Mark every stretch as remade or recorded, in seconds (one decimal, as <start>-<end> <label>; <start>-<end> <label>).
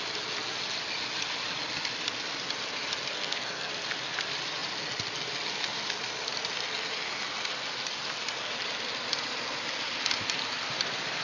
0.0-3.1 recorded; 3.1-3.7 remade; 3.7-11.2 recorded